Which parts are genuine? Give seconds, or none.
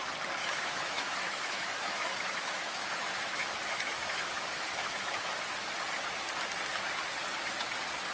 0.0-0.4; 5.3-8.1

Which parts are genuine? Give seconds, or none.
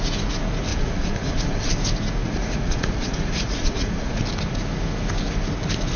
0.0-0.7; 1.7-2.2; 4.2-6.0